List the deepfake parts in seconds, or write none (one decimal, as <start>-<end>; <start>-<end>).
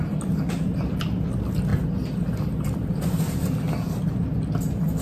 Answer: none